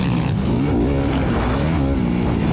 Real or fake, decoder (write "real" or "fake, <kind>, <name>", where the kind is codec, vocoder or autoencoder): real